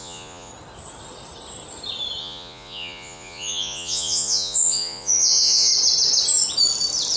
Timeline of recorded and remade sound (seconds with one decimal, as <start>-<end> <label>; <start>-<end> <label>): 0.0-0.5 remade; 0.5-2.2 recorded; 2.2-5.7 remade; 5.7-7.2 recorded